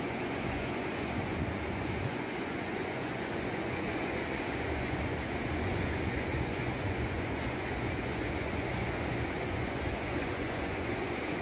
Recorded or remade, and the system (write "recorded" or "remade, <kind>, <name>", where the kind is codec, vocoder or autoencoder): remade, vocoder, Vocos